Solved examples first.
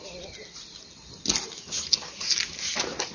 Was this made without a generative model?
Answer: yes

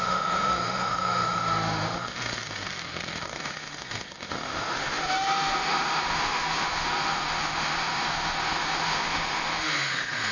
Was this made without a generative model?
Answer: no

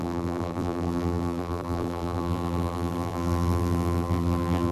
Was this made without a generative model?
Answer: no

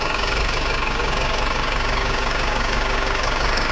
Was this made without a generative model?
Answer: no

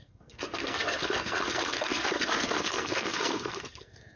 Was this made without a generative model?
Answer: no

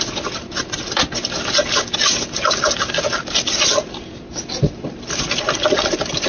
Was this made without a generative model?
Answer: yes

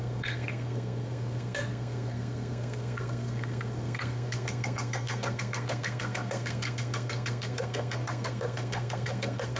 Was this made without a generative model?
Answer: no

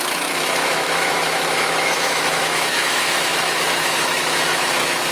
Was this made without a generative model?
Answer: no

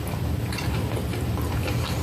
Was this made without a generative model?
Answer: yes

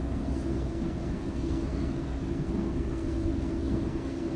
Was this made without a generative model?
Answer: no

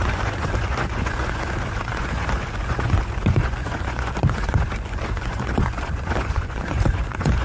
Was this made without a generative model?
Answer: no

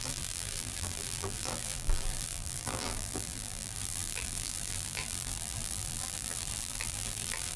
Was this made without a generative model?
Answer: no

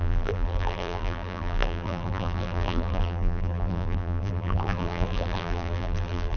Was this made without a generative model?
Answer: no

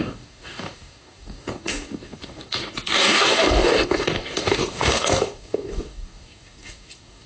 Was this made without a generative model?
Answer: no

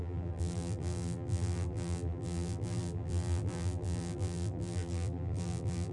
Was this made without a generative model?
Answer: no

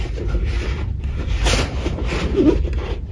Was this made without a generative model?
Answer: yes